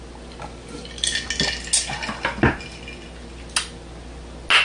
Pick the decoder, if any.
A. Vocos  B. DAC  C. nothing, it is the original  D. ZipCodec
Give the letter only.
C